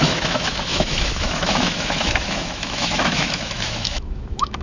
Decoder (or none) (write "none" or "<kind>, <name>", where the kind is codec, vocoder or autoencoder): autoencoder, DAC-VAE